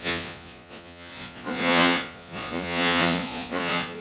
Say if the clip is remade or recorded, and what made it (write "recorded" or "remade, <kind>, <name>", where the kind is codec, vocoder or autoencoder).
remade, vocoder, Vocos